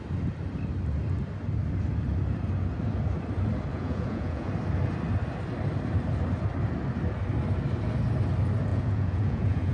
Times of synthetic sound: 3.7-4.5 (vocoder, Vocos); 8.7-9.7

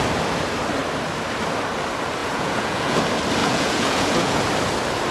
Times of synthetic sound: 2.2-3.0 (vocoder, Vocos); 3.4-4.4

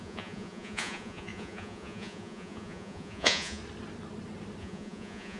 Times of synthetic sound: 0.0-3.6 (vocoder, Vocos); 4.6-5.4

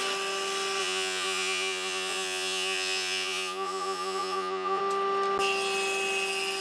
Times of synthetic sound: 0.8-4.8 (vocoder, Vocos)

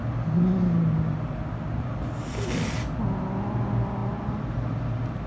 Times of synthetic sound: none